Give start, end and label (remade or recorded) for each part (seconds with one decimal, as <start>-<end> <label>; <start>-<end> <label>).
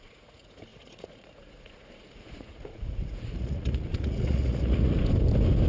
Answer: 0.0-5.0 remade; 5.0-5.7 recorded